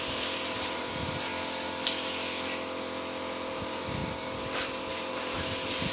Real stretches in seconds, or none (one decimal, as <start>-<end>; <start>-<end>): 1.3-3.5